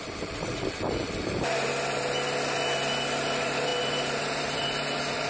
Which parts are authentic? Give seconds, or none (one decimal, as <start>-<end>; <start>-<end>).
0.0-3.2